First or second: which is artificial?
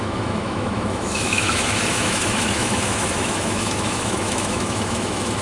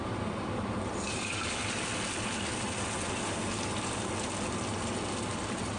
first